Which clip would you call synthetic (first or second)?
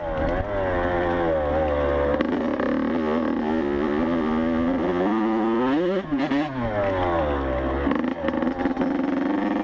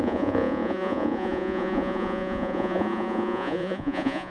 second